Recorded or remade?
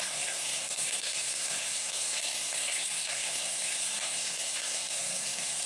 remade